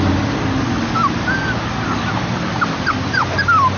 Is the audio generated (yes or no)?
no